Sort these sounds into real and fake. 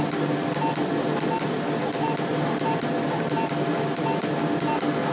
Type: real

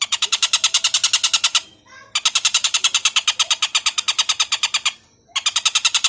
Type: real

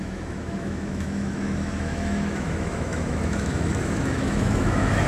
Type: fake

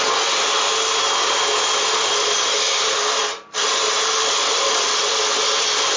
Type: real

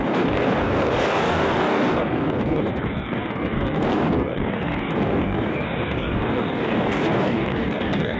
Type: fake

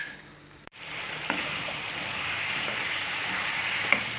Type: fake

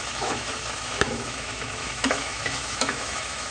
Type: fake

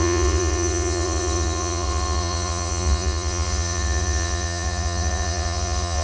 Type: fake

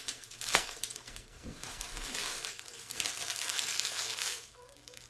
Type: fake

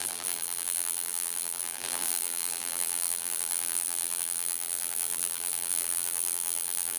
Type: fake